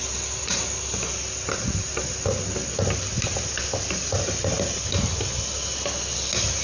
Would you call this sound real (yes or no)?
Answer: yes